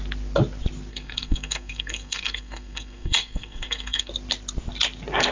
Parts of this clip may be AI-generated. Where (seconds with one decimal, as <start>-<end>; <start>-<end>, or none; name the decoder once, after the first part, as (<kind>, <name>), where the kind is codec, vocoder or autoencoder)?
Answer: 0.9-4.1 (codec, SNAC)